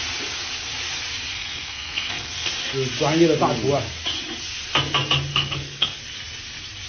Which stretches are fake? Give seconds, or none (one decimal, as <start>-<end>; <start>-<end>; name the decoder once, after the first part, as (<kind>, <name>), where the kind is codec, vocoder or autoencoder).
1.3-2.5 (codec, SNAC); 5.3-6.0